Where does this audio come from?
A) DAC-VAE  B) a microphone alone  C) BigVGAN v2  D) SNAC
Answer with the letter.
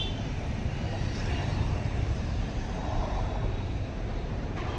C